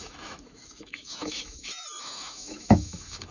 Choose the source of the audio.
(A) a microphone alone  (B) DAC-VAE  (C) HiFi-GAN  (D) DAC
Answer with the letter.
B